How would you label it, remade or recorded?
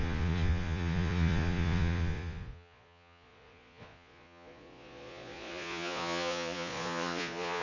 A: remade